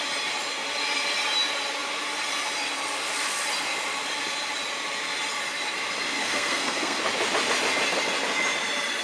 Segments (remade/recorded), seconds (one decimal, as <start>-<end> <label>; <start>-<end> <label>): 0.0-6.2 recorded; 6.2-7.0 remade; 7.0-9.0 recorded